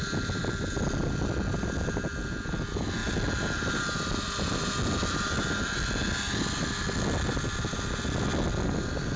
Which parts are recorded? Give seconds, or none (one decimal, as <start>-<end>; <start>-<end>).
0.0-9.2